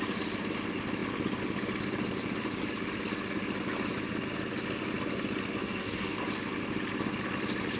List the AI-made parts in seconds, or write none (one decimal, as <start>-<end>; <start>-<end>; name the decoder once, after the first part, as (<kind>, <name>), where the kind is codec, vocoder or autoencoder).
5.6-6.2 (codec, SNAC)